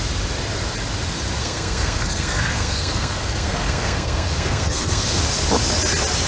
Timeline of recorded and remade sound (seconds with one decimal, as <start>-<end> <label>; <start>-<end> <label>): 0.0-1.4 recorded; 1.4-5.2 remade; 5.2-6.3 recorded